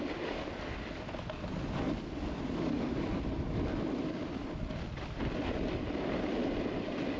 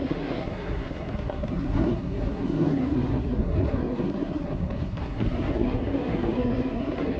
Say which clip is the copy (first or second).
second